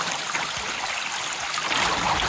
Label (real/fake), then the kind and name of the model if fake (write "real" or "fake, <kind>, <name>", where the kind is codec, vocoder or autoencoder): real